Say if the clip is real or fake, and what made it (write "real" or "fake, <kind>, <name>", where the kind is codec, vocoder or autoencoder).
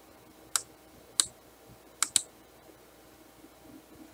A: real